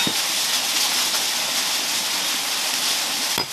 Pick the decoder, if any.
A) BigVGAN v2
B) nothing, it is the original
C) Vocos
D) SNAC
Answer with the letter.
B